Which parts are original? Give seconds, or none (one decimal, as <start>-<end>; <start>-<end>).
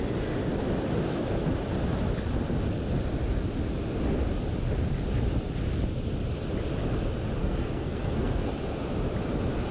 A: 0.0-7.4; 8.5-9.7